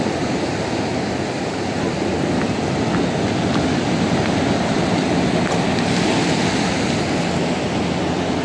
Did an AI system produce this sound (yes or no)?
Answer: no